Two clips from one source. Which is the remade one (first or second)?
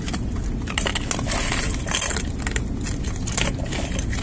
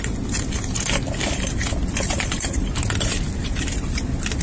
second